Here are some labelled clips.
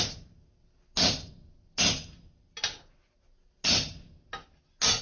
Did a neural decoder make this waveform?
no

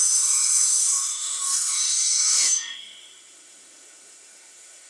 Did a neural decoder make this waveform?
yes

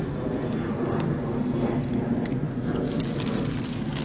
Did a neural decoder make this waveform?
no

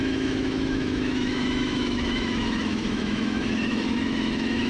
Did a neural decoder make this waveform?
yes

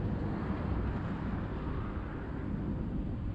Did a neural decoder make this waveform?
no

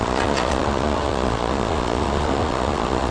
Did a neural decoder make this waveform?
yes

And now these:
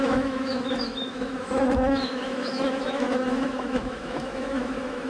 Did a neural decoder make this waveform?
yes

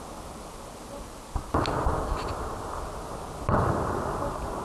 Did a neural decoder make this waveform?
no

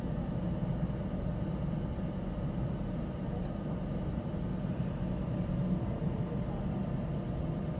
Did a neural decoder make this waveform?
no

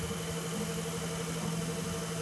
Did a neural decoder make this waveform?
no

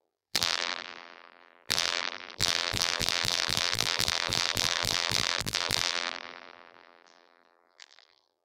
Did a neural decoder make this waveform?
yes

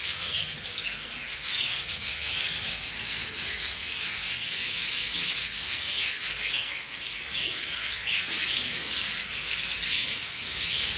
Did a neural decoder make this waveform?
yes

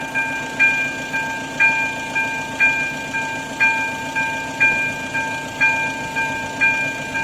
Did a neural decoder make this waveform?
no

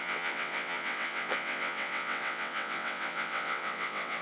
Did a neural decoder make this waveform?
yes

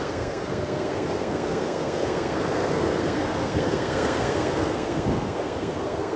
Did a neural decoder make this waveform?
yes